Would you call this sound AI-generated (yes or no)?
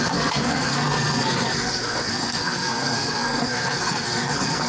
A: yes